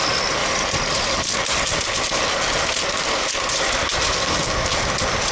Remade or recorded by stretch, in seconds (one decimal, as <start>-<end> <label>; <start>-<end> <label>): 0.0-5.3 recorded